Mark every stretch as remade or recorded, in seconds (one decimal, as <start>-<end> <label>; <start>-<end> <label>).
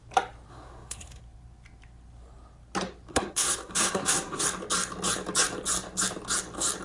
0.0-0.5 recorded; 0.5-1.2 remade; 1.2-3.1 recorded; 3.1-4.4 remade; 4.4-6.8 recorded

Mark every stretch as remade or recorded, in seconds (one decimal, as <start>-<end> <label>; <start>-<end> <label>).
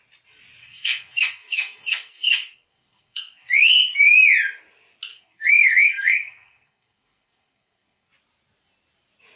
0.0-0.6 recorded; 0.6-4.2 remade; 4.2-5.1 recorded; 5.1-8.1 remade; 8.1-9.4 recorded